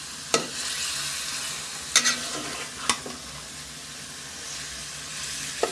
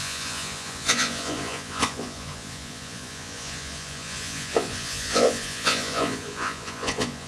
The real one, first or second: first